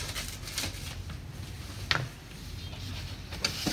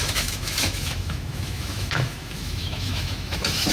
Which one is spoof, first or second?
second